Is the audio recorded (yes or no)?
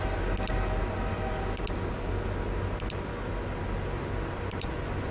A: yes